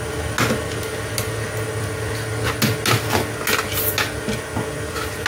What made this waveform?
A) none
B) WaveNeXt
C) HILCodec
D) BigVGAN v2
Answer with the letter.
A